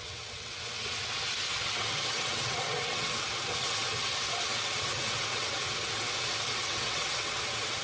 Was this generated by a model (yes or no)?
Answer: yes